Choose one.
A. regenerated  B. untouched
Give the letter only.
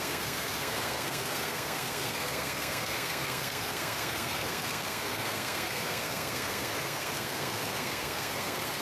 A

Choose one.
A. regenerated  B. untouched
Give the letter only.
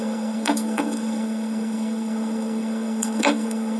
A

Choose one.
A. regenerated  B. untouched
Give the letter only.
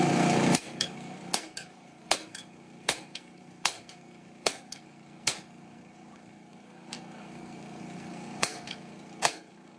A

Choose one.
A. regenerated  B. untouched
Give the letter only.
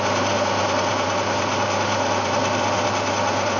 B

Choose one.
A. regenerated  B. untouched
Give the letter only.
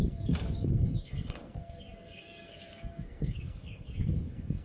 A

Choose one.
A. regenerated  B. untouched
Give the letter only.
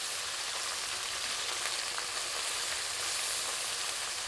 B